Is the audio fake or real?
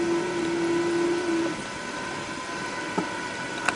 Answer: real